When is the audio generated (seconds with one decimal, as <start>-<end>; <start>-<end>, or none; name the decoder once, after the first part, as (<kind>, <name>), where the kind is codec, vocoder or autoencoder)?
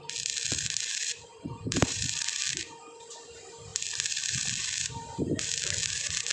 1.3-2.1 (vocoder, BigVGAN v2)